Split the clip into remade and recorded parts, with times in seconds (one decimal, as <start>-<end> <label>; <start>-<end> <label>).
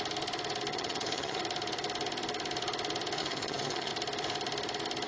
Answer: 0.0-0.7 recorded; 0.7-1.4 remade; 1.4-3.2 recorded; 3.2-3.9 remade; 3.9-5.1 recorded